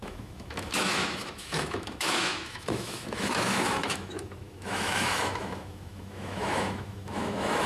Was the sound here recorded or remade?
remade